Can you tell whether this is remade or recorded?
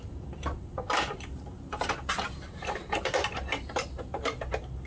remade